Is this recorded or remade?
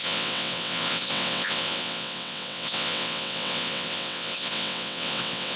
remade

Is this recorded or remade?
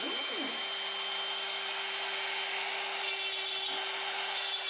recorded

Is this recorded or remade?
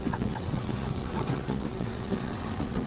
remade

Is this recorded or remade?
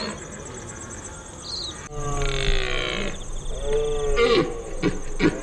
recorded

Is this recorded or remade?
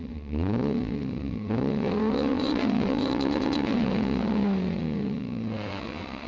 remade